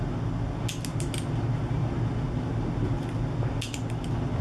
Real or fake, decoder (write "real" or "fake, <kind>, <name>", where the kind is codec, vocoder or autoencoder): real